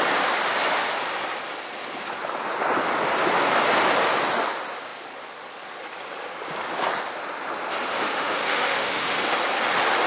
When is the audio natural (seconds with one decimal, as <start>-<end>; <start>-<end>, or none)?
0.0-7.9; 9.2-10.1